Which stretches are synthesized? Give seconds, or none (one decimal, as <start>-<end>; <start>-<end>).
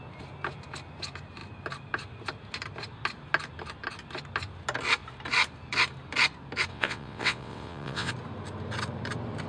6.7-8.1